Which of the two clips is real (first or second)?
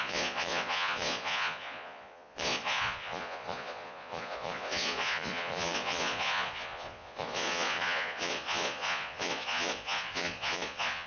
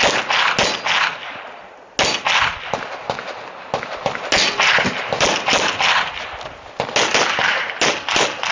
second